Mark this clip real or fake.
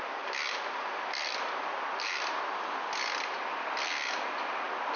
real